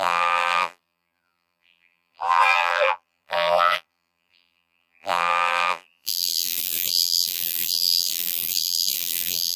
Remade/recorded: remade